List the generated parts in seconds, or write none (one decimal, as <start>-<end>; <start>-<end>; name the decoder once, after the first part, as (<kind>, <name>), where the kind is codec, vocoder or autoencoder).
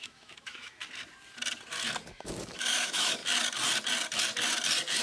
0.0-0.8 (autoencoder, DAC-VAE); 2.1-3.2